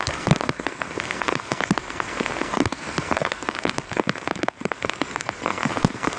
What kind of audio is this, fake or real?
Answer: fake